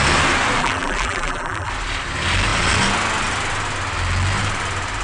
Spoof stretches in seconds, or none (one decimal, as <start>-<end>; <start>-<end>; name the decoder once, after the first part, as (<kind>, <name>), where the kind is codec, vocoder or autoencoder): 0.6-1.7 (vocoder, BigVGAN v2)